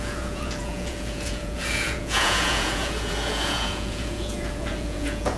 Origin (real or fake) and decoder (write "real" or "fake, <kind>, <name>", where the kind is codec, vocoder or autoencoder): fake, vocoder, Vocos